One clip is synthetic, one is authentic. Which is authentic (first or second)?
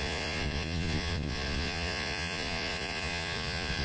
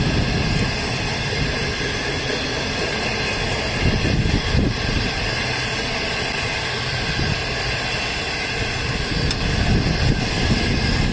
second